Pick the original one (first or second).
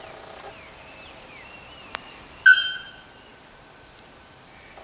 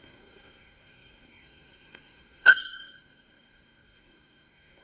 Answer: first